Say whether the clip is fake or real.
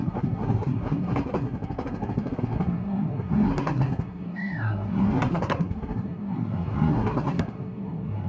fake